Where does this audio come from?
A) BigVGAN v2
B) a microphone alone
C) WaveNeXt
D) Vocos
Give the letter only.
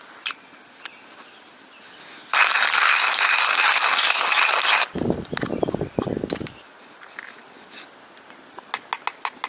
B